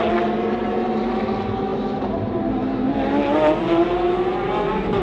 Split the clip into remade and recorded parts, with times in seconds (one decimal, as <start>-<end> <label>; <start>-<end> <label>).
0.0-5.0 recorded